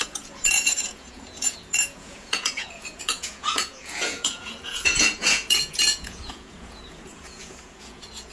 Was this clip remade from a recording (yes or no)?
yes